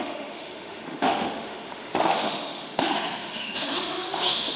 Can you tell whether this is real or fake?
fake